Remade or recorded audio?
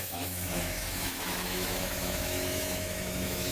remade